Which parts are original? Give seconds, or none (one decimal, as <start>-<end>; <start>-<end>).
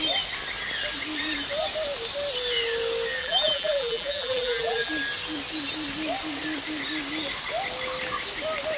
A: 0.0-3.2; 4.9-8.8